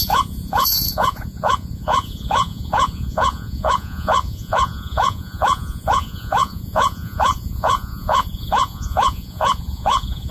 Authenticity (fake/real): fake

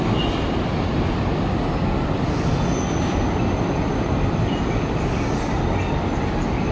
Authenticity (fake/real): real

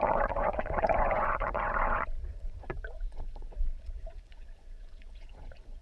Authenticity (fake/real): fake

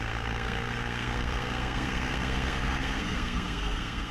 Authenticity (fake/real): fake